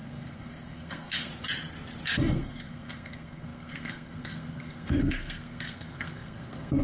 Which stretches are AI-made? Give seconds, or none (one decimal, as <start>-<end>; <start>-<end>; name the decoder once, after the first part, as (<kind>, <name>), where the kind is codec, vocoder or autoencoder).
0.0-1.3 (codec, SNAC); 2.2-6.8